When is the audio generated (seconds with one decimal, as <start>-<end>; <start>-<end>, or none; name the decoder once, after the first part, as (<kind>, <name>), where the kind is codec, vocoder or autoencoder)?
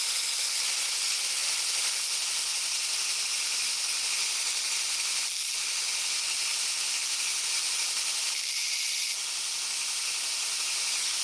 none